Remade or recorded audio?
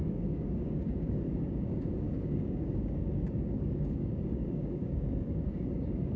remade